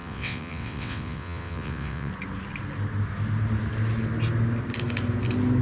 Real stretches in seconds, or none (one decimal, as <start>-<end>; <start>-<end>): 2.1-5.6

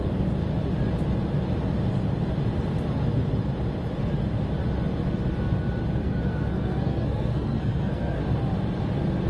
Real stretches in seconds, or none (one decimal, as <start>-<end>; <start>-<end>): 0.0-6.0; 8.2-9.3

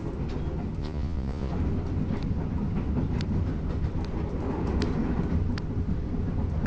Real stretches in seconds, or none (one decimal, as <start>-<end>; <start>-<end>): 0.0-0.8; 1.5-6.7

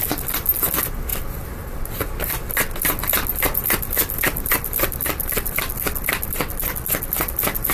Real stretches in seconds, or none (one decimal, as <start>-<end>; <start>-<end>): 0.0-1.1; 5.7-7.7

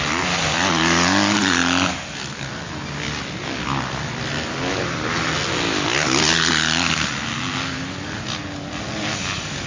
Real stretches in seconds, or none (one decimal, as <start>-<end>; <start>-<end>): 0.0-9.7